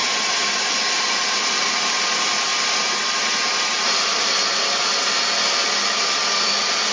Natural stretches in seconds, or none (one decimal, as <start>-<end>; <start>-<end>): 0.0-6.9